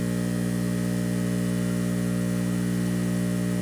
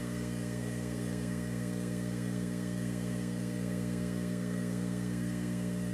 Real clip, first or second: first